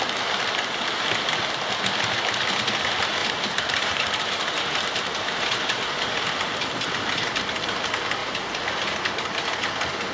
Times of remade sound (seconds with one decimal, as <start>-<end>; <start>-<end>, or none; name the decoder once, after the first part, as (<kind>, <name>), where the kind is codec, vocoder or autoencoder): 3.2-6.3 (vocoder, BigVGAN v2); 8.2-8.8